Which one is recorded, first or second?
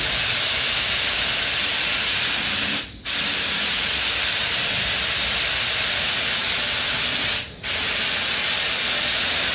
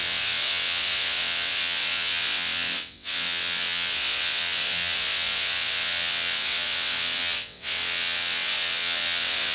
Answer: first